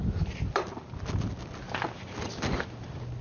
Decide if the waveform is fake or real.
real